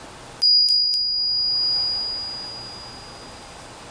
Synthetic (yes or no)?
no